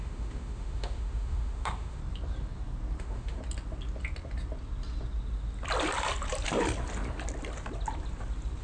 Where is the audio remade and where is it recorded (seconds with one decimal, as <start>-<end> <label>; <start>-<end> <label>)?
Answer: 0.0-2.0 remade; 2.0-3.0 recorded; 3.0-3.4 remade; 3.4-8.6 recorded